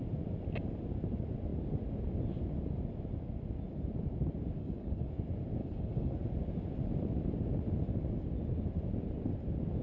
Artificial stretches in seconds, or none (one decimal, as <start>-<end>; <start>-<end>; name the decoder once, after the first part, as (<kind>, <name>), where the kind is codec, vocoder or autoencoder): 4.6-5.1 (codec, HILCodec); 5.6-6.1